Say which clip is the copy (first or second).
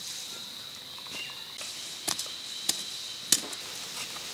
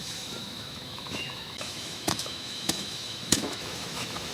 second